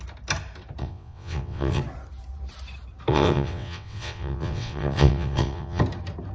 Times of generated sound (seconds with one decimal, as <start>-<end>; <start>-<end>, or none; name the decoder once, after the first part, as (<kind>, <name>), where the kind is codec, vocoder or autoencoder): 0.8-1.8 (vocoder, WaveNeXt); 3.1-5.8